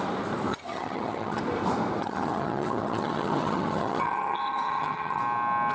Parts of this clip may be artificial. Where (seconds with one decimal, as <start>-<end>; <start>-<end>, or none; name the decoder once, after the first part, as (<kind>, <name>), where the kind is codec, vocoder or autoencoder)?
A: 0.5-1.4 (vocoder, HiFi-GAN); 2.0-5.2